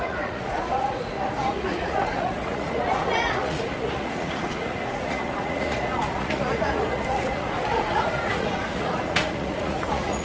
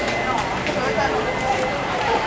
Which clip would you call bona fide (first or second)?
second